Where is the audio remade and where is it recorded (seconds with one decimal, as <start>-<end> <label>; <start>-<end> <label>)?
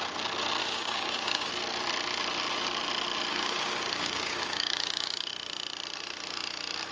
0.0-0.6 recorded; 0.6-1.5 remade; 1.5-3.3 recorded; 3.3-5.3 remade; 5.3-6.9 recorded